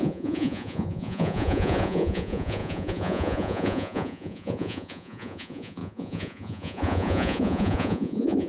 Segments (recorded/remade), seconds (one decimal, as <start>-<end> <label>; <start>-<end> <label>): 0.0-8.5 remade